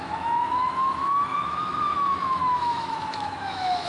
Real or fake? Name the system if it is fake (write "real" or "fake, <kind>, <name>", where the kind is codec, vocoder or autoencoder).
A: fake, autoencoder, DAC-VAE